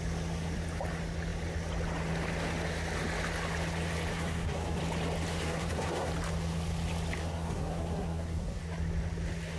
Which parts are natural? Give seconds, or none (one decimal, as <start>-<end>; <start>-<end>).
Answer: 0.0-4.1; 4.8-5.3; 6.1-7.2; 8.6-9.6

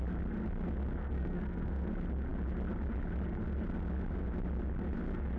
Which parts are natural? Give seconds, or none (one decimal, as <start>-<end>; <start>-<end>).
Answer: 0.0-1.0; 1.9-5.4